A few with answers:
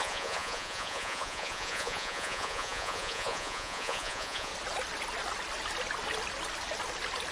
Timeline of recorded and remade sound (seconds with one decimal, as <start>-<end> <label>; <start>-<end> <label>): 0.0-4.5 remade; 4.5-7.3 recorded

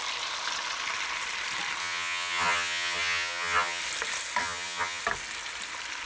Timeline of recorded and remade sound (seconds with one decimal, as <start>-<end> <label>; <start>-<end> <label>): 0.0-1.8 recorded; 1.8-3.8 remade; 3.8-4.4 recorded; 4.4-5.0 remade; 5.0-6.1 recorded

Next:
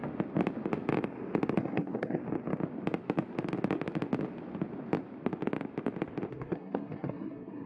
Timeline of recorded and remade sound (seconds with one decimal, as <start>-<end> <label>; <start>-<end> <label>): 0.0-1.6 recorded; 1.6-2.2 remade; 2.2-6.3 recorded; 6.3-7.7 remade

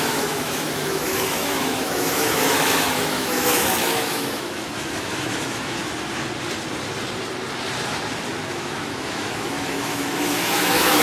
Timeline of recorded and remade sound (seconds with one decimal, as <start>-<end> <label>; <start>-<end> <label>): 0.0-5.8 remade; 5.8-8.5 recorded; 8.5-11.0 remade

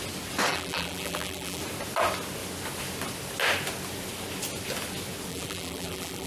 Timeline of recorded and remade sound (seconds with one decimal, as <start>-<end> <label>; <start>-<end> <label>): 0.0-0.5 recorded; 0.5-1.6 remade; 1.6-5.3 recorded; 5.3-6.3 remade

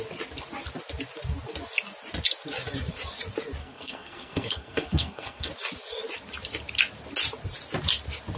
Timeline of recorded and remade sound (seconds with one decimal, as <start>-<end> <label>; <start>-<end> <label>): 0.0-3.6 recorded; 3.6-5.5 remade; 5.5-8.4 recorded

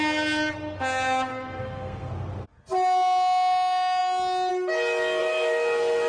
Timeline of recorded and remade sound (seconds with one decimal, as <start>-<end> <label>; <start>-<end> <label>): 0.0-1.3 recorded; 1.3-2.1 remade; 2.1-5.2 recorded; 5.2-6.1 remade

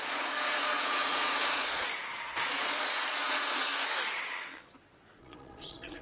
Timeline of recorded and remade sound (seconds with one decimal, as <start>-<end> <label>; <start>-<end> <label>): 0.0-3.7 remade; 3.7-4.2 recorded; 4.2-6.0 remade